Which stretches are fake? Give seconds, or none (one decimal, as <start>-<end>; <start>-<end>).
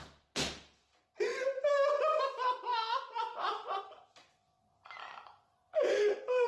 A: 1.3-2.2; 2.7-3.8; 4.6-6.5